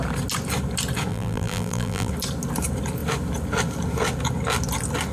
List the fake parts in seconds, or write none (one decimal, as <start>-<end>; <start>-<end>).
1.1-2.1